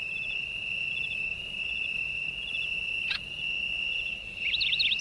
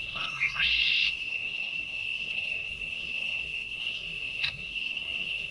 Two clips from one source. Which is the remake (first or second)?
second